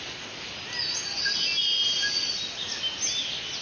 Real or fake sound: real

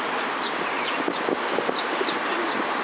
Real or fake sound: real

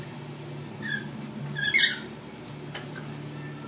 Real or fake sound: real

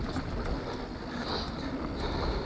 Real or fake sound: real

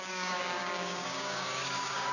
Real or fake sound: fake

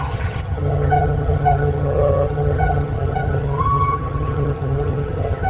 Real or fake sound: fake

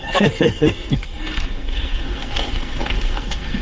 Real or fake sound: fake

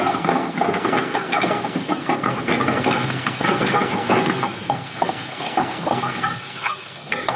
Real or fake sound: fake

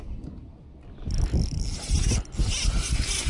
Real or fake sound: real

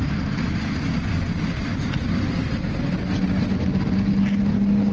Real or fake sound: real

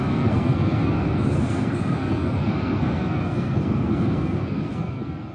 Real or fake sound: fake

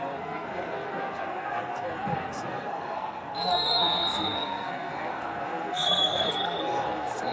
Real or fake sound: fake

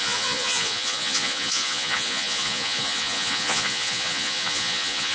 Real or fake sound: fake